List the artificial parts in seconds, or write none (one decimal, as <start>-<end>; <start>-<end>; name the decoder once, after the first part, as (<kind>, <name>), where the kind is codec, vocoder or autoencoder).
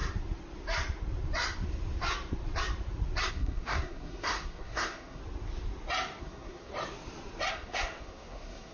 3.3-5.2 (codec, SNAC); 6.2-6.7; 7.5-8.7